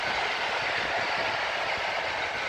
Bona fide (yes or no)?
yes